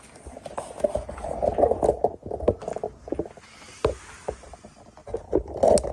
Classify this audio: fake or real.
real